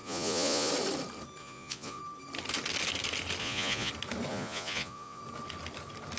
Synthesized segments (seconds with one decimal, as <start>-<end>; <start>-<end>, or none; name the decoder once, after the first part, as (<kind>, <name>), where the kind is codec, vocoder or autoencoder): 0.0-0.7 (vocoder, Vocos); 1.4-2.0; 3.4-3.9; 4.3-5.2

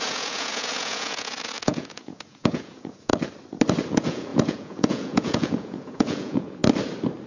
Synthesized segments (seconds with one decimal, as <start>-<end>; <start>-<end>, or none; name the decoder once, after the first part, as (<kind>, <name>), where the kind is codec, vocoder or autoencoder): 0.0-3.1 (vocoder, Vocos); 3.9-6.6

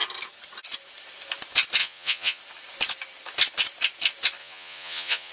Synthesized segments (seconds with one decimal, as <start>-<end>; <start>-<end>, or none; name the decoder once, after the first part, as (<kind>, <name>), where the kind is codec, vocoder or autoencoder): 1.8-2.4 (vocoder, Vocos); 4.4-5.3

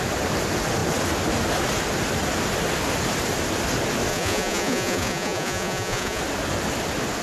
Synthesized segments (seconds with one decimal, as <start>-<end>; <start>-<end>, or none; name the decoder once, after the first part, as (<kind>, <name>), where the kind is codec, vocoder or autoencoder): 4.1-6.2 (vocoder, Vocos)

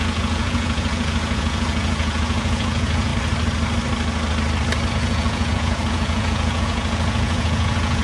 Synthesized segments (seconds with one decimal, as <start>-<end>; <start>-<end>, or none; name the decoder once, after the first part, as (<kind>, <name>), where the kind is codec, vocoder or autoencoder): 0.0-3.1 (vocoder, Vocos); 4.9-8.0

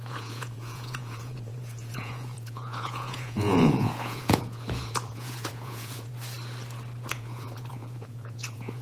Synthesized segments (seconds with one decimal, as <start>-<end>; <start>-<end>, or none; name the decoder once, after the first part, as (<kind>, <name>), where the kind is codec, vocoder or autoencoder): 0.0-6.1 (vocoder, Vocos); 7.1-8.8